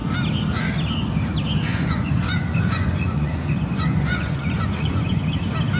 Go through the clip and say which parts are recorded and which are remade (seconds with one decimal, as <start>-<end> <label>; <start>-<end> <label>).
0.0-1.7 recorded; 1.7-5.2 remade; 5.2-5.8 recorded